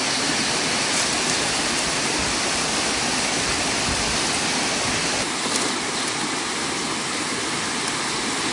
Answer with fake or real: real